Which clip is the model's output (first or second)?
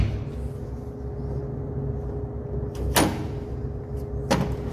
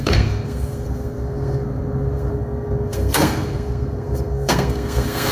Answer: second